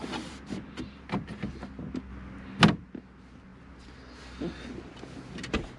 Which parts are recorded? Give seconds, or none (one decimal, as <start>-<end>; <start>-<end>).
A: 0.0-5.8